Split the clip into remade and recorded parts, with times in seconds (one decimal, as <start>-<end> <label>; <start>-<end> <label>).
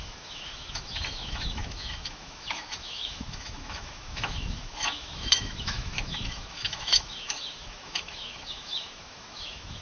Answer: 0.0-9.8 remade